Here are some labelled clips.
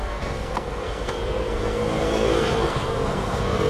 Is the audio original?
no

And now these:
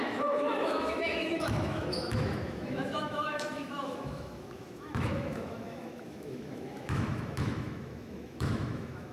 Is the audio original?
no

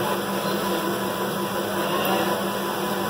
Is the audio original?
yes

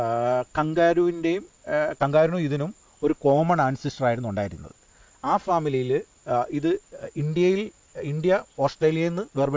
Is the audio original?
yes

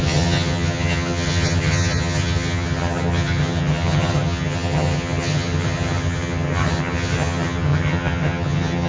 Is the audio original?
no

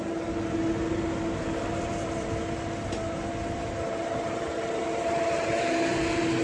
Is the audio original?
yes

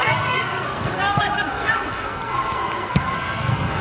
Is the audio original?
no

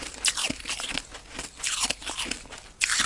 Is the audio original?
yes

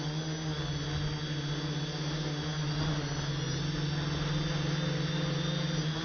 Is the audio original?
yes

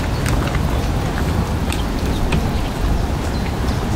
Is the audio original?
yes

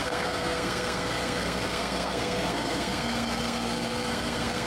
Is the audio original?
no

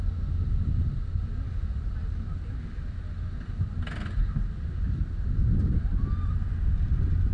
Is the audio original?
yes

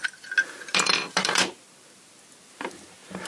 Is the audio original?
yes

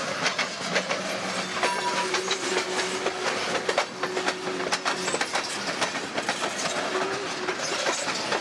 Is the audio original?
yes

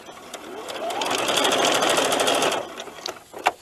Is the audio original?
yes